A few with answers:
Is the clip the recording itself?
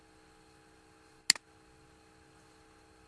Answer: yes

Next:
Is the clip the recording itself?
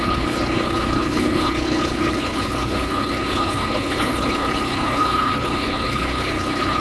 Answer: no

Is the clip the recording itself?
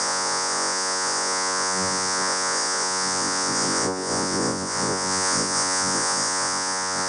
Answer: no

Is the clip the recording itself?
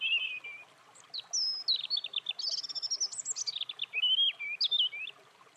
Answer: yes